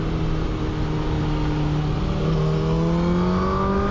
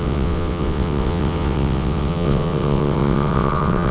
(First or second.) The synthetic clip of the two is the second